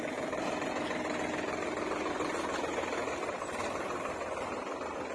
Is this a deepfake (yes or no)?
no